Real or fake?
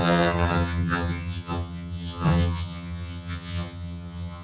fake